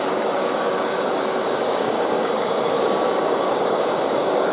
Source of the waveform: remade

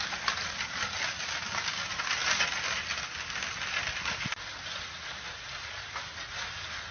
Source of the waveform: recorded